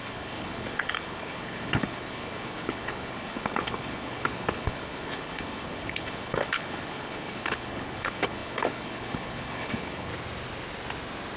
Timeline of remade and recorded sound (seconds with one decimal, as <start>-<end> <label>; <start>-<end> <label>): 0.0-10.1 remade; 10.1-11.4 recorded